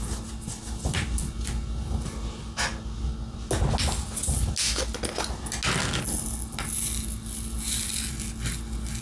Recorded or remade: recorded